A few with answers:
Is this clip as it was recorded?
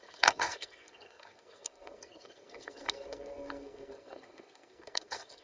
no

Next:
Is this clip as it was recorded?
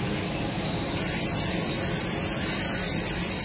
yes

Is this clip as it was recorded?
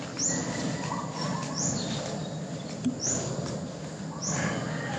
yes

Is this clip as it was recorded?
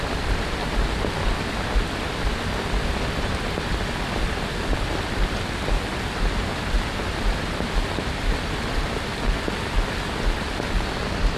yes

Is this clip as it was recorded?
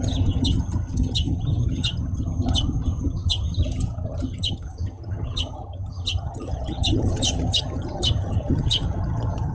no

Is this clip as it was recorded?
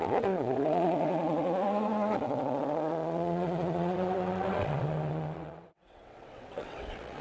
no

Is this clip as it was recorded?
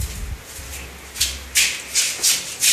yes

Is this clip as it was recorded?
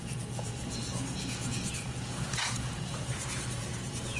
no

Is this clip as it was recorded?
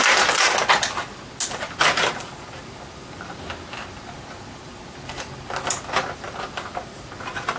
yes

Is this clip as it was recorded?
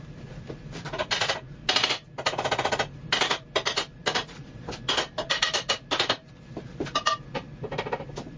yes